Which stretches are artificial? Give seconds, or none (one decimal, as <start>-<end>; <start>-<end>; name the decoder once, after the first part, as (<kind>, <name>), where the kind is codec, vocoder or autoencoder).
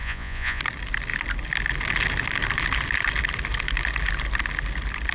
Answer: 0.0-0.6 (vocoder, Vocos)